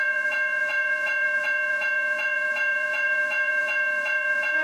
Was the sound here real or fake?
fake